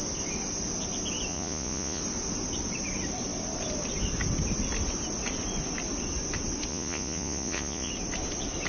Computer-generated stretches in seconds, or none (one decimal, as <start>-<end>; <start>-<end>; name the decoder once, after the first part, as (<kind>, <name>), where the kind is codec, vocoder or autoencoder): 1.3-2.0 (vocoder, Vocos); 6.7-7.9